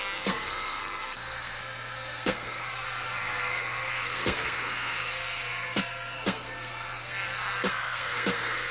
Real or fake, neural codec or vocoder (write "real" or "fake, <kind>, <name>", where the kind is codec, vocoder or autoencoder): fake, codec, SNAC